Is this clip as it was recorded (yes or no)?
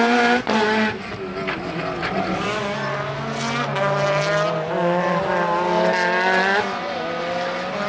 yes